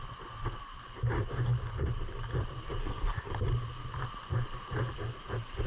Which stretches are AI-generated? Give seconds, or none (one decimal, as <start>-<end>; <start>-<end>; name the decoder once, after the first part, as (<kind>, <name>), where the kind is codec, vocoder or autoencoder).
2.8-3.3 (codec, SNAC)